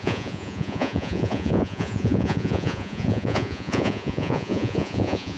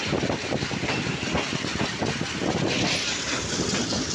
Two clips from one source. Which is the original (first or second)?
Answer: second